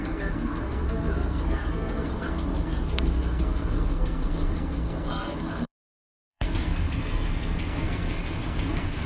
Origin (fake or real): fake